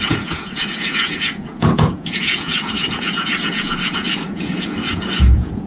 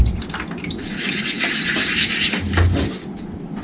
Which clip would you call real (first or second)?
second